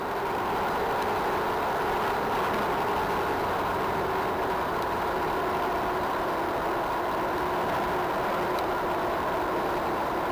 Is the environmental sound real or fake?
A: real